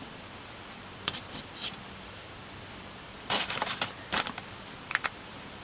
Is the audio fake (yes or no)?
yes